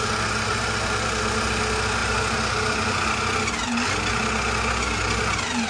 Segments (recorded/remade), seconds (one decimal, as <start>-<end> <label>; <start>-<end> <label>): 0.0-5.7 recorded